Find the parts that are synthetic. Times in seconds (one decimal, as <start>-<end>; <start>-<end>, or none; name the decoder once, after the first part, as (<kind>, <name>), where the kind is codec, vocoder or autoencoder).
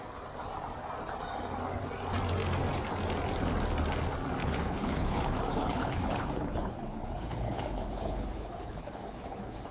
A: 4.4-9.7 (codec, HILCodec)